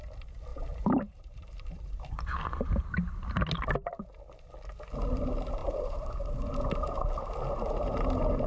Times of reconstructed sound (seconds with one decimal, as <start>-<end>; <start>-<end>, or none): 0.5-2.9; 5.6-6.5